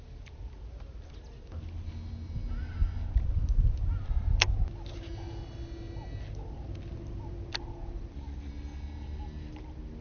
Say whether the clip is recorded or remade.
recorded